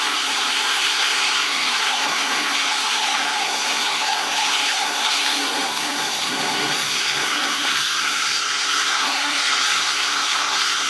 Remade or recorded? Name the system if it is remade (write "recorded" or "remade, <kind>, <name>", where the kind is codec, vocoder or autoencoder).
remade, codec, SNAC